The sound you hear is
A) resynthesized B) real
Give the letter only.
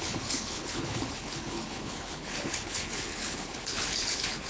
A